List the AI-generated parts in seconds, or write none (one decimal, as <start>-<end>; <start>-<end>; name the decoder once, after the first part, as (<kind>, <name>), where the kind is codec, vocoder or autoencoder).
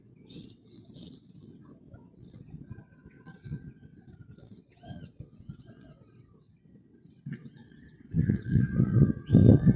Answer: 0.0-9.8 (vocoder, WaveNeXt)